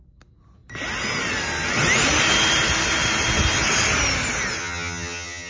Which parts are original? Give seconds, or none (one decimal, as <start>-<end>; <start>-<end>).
0.0-4.6